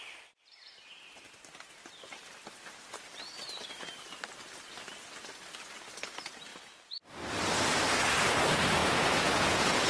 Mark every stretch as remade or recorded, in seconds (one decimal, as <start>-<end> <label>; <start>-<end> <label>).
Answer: 0.0-8.8 recorded; 8.8-9.9 remade